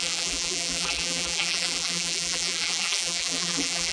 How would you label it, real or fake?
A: fake